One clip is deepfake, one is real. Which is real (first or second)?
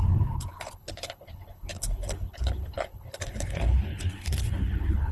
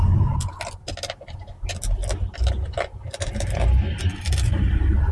second